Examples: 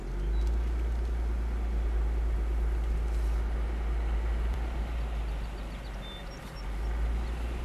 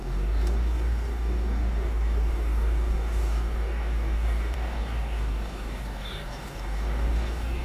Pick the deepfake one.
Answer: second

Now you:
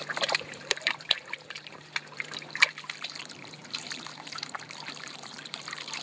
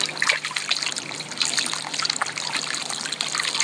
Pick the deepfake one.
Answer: first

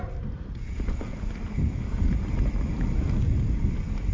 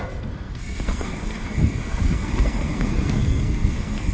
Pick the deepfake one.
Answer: second